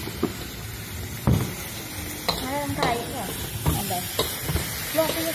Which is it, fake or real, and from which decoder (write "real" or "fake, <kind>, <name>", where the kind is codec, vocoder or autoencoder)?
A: real